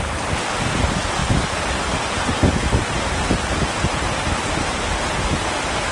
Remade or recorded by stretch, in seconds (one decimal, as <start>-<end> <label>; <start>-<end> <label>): 0.0-5.9 recorded